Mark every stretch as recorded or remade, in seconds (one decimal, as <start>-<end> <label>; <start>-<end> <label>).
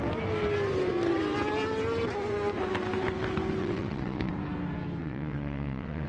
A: 0.0-3.6 recorded; 3.6-4.3 remade; 4.3-5.0 recorded; 5.0-6.1 remade